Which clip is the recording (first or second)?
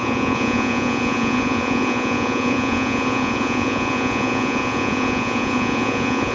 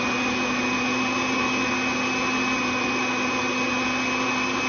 second